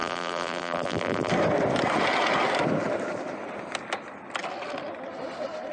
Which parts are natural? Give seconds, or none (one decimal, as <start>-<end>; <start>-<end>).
1.3-5.7